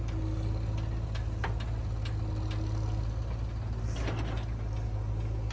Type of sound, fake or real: real